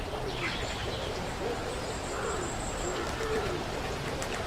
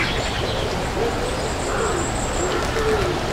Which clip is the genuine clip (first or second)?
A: second